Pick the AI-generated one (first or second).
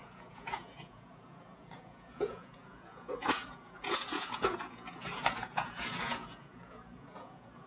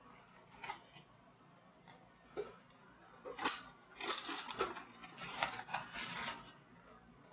first